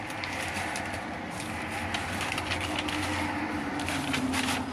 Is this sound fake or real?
fake